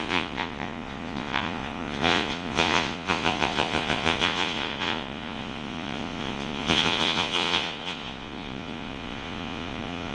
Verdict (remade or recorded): remade